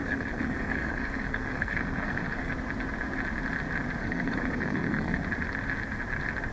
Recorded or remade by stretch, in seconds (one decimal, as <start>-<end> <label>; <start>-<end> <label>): 0.0-2.5 remade; 2.5-4.0 recorded; 4.0-5.2 remade; 5.2-6.5 recorded